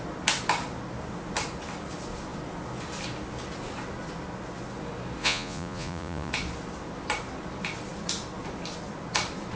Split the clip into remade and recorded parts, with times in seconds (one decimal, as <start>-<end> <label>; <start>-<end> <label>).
0.0-5.2 recorded; 5.2-6.3 remade; 6.3-9.6 recorded